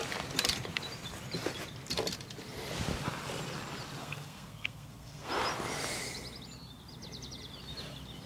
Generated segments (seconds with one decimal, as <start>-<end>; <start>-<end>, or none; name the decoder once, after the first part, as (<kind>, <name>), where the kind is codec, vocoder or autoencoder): 4.0-5.3 (codec, SNAC)